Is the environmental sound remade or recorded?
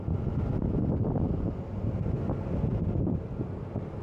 recorded